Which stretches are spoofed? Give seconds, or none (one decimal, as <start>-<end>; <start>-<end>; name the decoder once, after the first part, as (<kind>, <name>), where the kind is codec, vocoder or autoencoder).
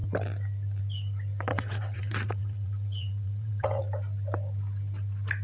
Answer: 1.5-3.8 (vocoder, WaveNeXt)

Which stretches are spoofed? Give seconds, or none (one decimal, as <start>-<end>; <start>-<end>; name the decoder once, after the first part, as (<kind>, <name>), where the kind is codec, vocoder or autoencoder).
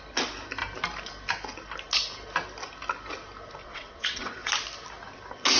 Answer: 3.6-4.5 (vocoder, WaveNeXt)